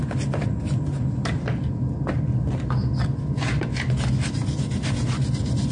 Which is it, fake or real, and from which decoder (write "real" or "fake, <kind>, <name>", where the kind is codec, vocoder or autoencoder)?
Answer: real